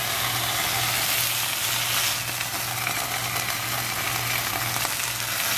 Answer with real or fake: real